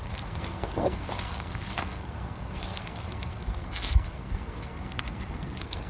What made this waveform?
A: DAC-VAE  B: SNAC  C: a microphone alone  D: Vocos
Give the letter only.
B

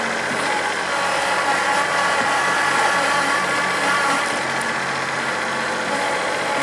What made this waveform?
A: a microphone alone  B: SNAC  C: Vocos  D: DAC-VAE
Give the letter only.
A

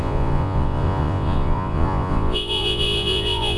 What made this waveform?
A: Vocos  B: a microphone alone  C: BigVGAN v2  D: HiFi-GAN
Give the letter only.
A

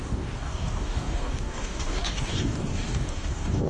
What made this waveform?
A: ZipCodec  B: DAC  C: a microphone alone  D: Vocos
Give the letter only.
B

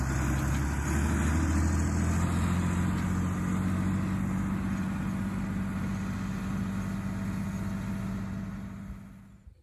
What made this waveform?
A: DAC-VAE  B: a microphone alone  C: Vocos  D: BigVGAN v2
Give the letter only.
B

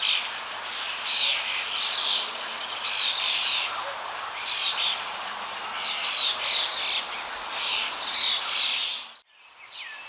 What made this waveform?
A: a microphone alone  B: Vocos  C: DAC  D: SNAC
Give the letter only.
A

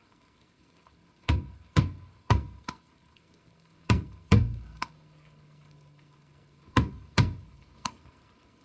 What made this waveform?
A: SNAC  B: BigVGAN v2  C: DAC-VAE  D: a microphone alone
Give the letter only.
A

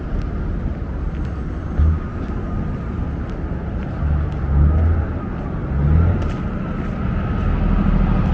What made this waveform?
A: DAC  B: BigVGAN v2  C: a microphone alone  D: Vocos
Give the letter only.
C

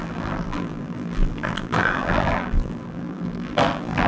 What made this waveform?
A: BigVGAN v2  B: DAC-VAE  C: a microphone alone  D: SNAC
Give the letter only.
A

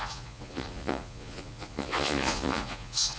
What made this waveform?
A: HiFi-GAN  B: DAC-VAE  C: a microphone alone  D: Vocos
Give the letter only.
D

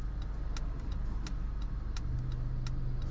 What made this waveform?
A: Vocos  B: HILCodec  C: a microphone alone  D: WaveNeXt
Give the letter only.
C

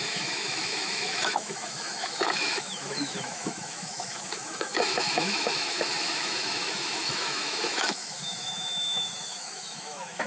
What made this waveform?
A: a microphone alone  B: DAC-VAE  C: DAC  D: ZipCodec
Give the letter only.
B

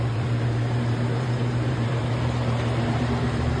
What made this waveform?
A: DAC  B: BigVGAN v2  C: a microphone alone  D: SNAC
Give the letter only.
B